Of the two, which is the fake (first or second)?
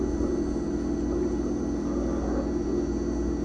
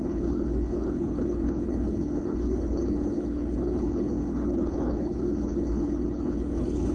second